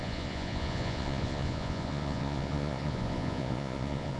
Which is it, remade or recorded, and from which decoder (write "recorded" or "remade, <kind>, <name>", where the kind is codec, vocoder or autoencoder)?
remade, vocoder, Vocos